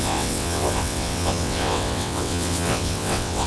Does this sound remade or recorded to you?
remade